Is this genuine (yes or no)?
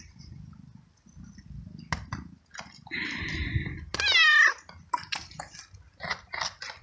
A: yes